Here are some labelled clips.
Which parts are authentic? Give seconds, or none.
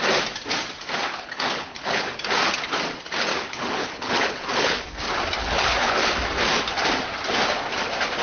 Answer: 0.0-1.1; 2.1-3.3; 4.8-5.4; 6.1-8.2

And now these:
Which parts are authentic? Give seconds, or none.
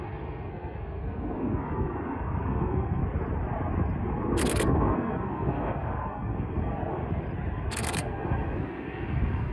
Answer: 3.0-4.4; 7.0-7.7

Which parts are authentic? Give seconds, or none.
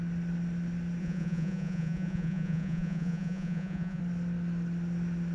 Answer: 0.0-1.0; 4.0-5.3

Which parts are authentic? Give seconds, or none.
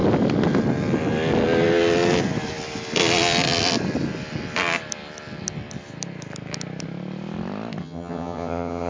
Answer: 0.0-7.8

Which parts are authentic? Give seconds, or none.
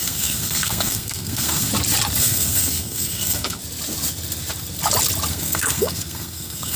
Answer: 1.7-2.2; 3.6-5.3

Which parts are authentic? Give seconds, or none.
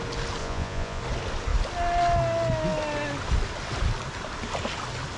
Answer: 0.0-0.4; 1.0-5.2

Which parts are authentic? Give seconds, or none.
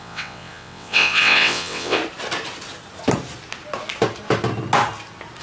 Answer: 2.0-5.4